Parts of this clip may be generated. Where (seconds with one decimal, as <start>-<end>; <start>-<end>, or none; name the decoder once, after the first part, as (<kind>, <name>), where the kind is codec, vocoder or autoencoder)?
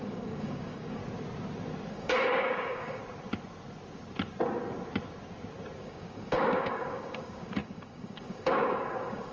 0.0-1.0 (codec, DAC); 1.9-3.0; 5.8-9.3